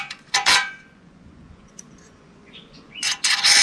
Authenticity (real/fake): fake